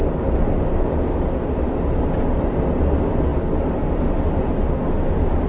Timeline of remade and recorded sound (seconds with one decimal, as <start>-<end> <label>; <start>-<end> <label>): 0.0-5.5 recorded

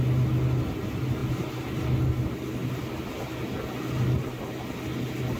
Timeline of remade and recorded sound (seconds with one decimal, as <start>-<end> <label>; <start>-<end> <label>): 0.0-5.4 recorded

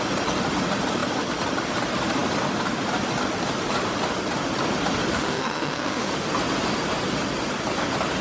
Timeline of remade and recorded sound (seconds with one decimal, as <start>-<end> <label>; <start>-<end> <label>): 0.0-5.1 recorded; 5.1-6.1 remade; 6.1-8.2 recorded

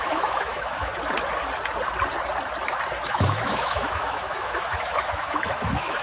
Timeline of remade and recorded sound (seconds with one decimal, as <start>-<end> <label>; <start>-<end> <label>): 0.0-0.9 remade; 0.9-3.1 recorded; 3.1-6.0 remade

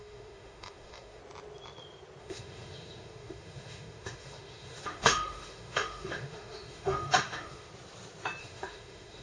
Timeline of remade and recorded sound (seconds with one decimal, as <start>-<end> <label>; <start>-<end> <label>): 0.0-1.2 remade; 1.2-2.2 recorded; 2.2-7.7 remade; 7.7-8.4 recorded; 8.4-9.2 remade

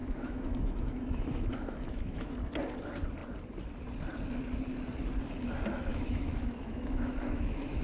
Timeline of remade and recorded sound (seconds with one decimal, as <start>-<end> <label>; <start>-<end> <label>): 0.0-2.3 remade; 2.3-5.9 recorded; 5.9-7.8 remade